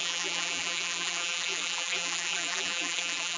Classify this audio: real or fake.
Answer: fake